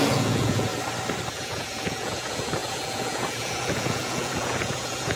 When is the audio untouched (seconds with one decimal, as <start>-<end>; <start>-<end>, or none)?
0.7-1.3